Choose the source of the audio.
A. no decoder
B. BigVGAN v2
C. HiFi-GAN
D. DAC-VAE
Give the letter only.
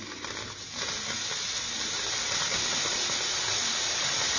A